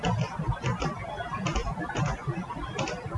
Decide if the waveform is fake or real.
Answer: real